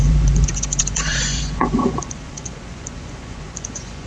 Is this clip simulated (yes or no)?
yes